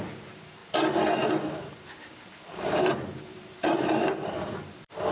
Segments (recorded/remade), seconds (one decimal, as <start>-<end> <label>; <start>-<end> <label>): 0.0-5.1 remade